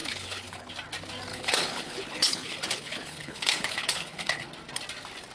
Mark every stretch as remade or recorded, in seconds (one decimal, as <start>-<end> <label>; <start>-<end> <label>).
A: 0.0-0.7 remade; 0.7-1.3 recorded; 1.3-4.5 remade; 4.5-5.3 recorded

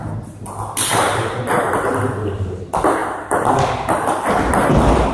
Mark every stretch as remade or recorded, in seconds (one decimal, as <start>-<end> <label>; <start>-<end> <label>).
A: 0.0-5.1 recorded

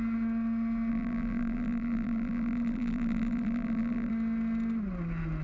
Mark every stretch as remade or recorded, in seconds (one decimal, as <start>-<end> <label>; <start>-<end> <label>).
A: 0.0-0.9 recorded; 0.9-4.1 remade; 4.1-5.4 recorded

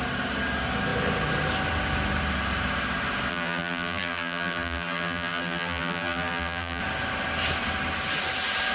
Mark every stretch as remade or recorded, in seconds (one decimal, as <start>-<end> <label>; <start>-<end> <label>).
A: 0.0-3.3 recorded; 3.3-6.8 remade; 6.8-8.7 recorded

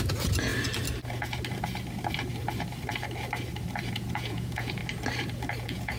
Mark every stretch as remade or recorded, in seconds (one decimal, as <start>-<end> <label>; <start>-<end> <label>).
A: 0.0-0.5 remade; 0.5-3.9 recorded; 3.9-4.8 remade; 4.8-5.6 recorded; 5.6-6.0 remade

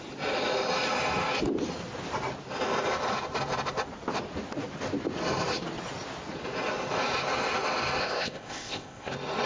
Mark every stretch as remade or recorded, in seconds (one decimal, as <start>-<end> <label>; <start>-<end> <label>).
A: 0.0-8.0 recorded; 8.0-9.1 remade; 9.1-9.5 recorded